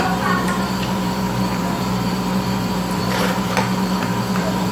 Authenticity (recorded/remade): remade